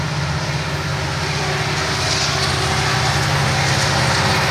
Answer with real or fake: real